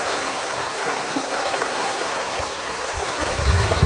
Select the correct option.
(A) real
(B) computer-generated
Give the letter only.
B